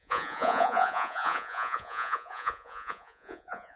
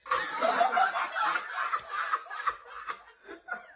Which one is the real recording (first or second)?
second